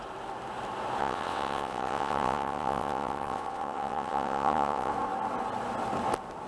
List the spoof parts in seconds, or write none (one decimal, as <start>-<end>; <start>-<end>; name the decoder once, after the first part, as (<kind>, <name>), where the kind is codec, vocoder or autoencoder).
1.0-4.9 (vocoder, WaveNeXt)